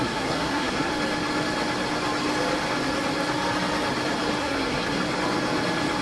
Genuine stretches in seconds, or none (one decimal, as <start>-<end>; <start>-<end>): 0.9-4.4; 5.0-6.0